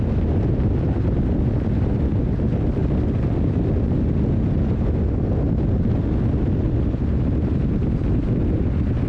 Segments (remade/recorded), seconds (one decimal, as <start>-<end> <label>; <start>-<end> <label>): 0.0-9.1 recorded

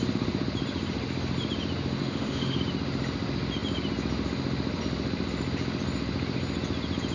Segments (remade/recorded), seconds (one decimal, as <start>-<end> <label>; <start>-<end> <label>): 0.0-2.0 recorded; 2.0-2.6 remade; 2.6-7.1 recorded